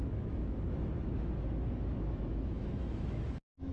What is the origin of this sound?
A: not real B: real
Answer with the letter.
A